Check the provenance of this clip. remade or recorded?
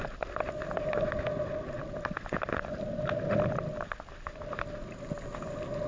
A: recorded